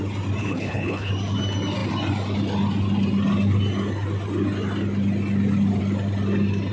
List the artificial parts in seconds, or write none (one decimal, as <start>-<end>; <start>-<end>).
0.4-1.1